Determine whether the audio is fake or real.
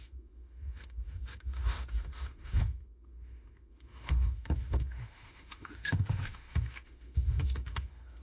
fake